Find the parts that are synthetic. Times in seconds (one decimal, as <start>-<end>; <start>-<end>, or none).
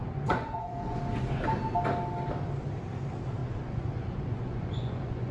0.0-1.0; 3.4-5.3